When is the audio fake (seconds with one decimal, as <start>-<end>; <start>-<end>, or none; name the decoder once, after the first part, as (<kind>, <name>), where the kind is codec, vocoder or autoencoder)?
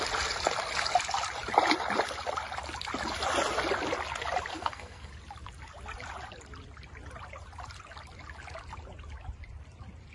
4.5-5.1 (codec, SNAC)